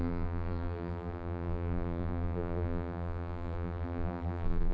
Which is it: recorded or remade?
remade